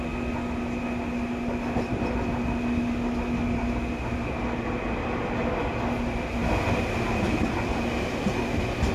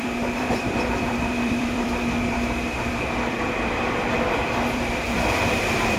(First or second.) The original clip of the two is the first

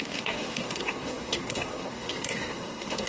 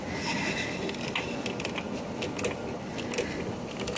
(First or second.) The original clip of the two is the second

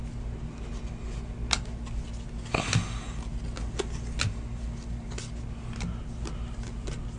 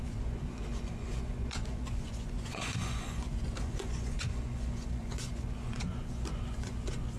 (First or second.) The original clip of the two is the first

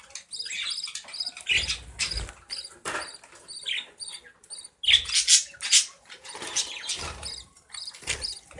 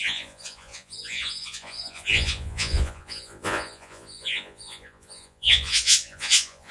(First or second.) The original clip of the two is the first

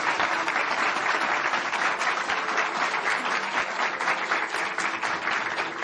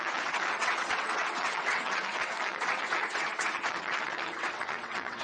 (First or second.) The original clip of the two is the first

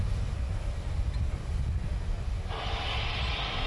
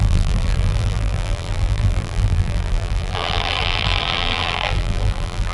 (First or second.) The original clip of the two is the first